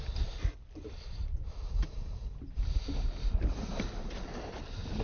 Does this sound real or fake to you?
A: real